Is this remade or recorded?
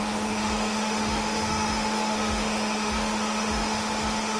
remade